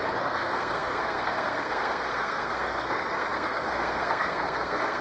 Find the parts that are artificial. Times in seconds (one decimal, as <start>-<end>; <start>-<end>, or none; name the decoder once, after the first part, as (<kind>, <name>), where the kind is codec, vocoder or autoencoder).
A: 0.0-5.0 (codec, SNAC)